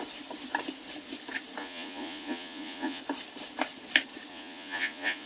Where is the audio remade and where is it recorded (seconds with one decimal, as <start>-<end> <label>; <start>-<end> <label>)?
0.0-1.6 recorded; 1.6-3.0 remade; 3.0-4.3 recorded; 4.3-5.3 remade